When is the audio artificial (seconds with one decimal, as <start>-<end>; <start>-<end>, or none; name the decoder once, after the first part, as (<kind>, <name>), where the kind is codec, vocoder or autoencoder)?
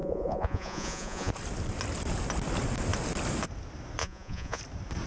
0.0-1.3 (vocoder, Vocos); 4.0-4.6